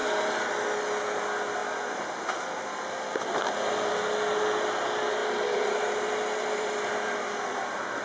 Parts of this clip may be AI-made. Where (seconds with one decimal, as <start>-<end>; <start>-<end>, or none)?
0.0-0.5; 5.2-8.0